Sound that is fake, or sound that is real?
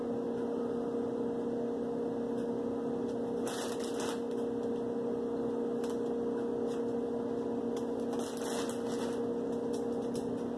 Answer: real